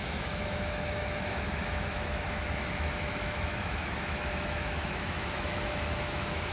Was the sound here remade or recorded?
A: remade